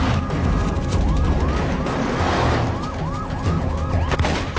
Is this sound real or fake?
real